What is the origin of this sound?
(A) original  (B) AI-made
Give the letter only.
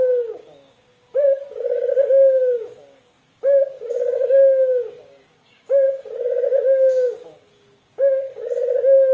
B